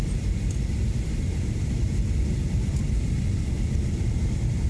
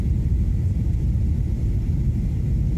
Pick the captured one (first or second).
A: second